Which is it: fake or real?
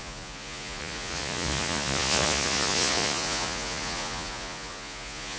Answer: fake